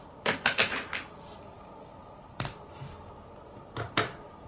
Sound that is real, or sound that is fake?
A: real